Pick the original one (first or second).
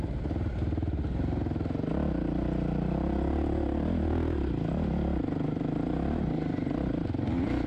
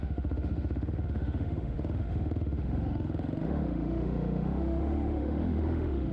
first